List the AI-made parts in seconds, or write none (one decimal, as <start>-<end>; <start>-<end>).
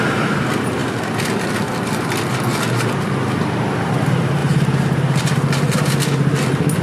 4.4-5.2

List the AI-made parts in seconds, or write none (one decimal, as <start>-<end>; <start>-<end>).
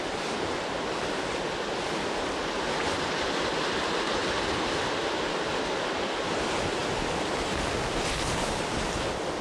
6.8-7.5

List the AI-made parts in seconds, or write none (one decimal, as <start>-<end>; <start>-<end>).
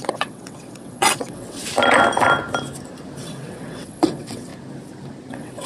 0.0-1.6; 3.2-4.5; 5.3-5.7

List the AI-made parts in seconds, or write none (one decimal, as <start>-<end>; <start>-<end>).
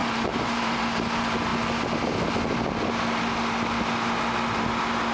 0.0-0.8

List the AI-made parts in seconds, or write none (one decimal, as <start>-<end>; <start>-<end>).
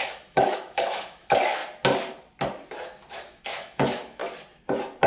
0.0-1.6; 3.1-4.2